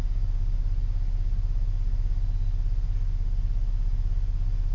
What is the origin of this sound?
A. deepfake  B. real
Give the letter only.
B